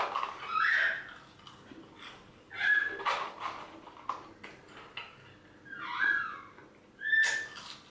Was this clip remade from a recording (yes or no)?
no